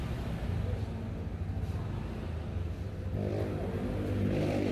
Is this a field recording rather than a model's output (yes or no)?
yes